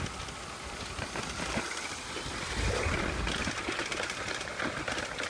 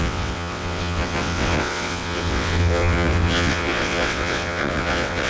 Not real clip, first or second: second